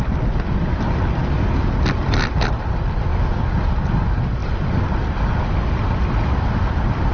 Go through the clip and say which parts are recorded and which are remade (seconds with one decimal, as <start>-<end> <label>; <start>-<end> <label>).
0.0-1.2 remade; 1.2-2.2 recorded; 2.2-3.1 remade; 3.1-4.0 recorded; 4.0-7.1 remade